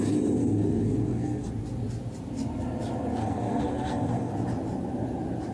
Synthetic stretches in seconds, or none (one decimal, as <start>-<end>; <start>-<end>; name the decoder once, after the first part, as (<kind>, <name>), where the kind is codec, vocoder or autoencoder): 0.4-1.5 (codec, SNAC); 3.2-4.3